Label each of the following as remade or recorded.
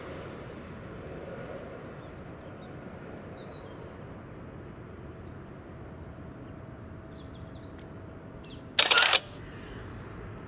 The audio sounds recorded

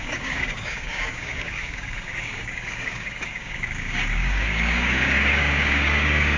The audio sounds remade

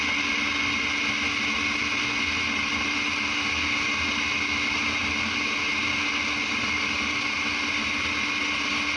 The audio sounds recorded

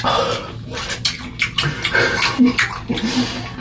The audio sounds recorded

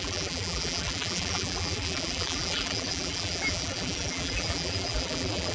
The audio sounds remade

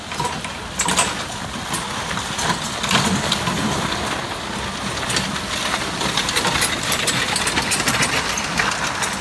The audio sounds recorded